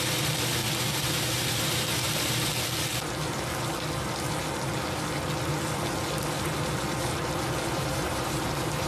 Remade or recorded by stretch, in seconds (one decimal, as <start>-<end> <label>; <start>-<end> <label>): 0.0-0.6 remade; 0.6-1.2 recorded; 1.2-2.5 remade; 2.5-7.7 recorded; 7.7-8.9 remade